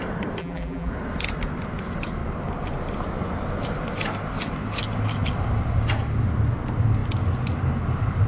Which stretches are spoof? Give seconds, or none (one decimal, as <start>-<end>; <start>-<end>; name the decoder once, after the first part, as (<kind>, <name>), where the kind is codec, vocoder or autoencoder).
0.4-0.9 (vocoder, BigVGAN v2)